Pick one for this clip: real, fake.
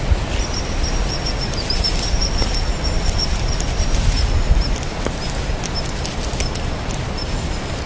real